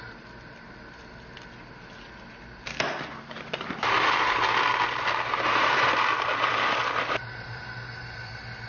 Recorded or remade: recorded